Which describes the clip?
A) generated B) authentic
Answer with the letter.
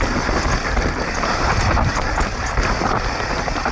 B